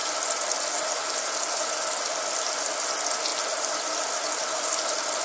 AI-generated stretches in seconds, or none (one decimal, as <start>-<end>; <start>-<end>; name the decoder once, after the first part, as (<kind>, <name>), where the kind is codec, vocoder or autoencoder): none